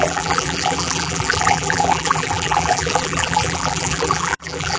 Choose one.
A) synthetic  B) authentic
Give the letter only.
A